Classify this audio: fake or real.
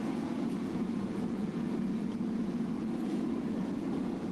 fake